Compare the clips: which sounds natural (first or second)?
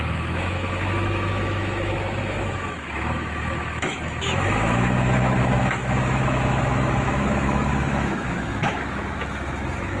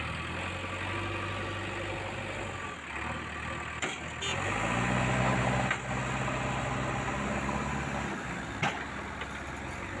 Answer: second